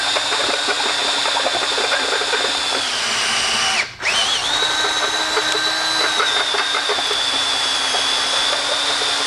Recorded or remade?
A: recorded